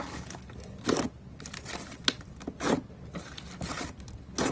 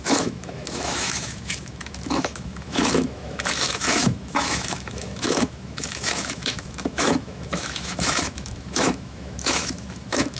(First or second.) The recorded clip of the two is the first